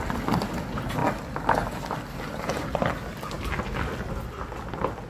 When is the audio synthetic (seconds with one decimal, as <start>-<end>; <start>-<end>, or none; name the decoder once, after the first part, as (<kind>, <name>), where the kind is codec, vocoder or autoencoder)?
none